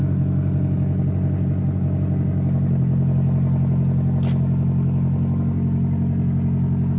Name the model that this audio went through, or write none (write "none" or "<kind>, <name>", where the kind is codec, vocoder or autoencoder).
none